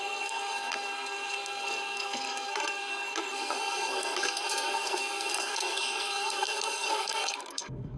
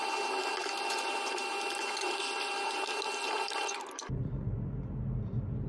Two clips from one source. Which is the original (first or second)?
second